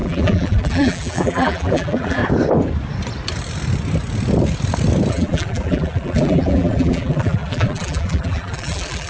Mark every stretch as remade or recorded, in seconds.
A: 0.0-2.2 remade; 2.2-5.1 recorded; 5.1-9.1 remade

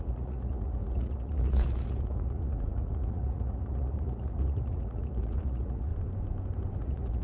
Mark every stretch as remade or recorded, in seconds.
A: 0.0-5.9 remade; 5.9-6.8 recorded; 6.8-7.2 remade

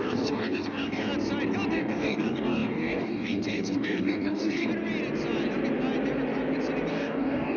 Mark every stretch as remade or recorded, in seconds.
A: 0.0-1.1 remade; 1.1-1.7 recorded; 1.7-4.7 remade; 4.7-6.9 recorded; 6.9-7.6 remade

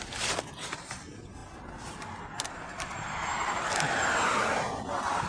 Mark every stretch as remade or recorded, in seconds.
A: 0.0-5.3 recorded

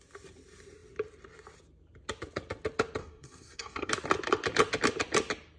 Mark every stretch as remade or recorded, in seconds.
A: 0.0-3.0 recorded; 3.0-3.9 remade; 3.9-5.6 recorded

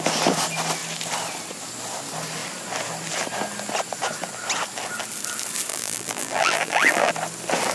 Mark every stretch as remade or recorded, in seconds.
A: 0.0-5.7 recorded; 5.7-7.1 remade; 7.1-7.7 recorded

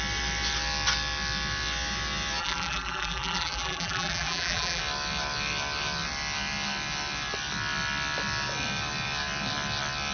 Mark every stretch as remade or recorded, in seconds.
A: 0.0-2.4 recorded; 2.4-4.8 remade; 4.8-10.1 recorded